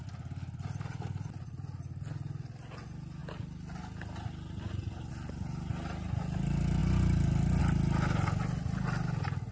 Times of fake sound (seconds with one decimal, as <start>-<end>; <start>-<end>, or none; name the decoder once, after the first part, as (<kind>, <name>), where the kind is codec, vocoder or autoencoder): none